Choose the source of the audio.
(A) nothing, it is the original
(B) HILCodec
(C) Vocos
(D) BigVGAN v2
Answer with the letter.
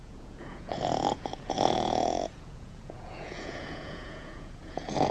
C